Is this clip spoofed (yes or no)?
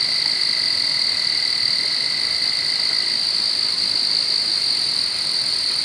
no